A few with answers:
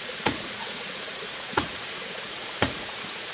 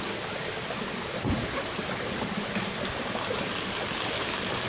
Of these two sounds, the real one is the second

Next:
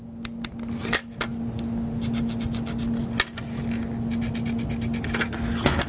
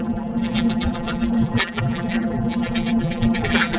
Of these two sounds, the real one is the first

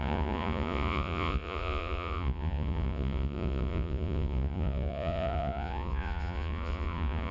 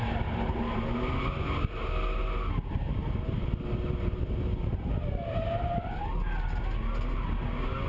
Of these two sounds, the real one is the second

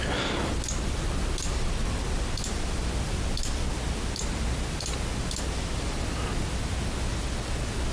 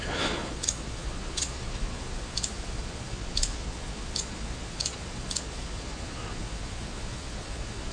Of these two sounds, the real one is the first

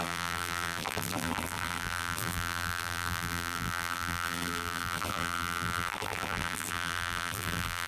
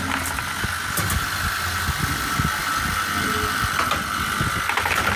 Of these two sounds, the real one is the second